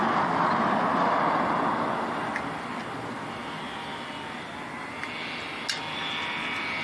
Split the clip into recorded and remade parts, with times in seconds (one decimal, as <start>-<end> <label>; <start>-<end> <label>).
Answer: 0.0-6.8 recorded